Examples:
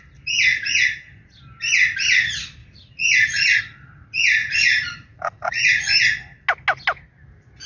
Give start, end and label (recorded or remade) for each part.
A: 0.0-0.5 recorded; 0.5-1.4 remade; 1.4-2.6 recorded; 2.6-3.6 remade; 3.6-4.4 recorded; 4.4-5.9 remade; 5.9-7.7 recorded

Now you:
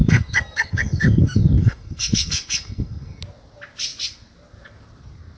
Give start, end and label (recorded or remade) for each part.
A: 0.0-3.2 remade; 3.2-5.4 recorded

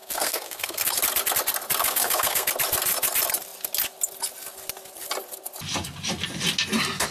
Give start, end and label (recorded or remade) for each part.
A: 0.0-0.9 remade; 0.9-1.8 recorded; 1.8-2.5 remade; 2.5-7.1 recorded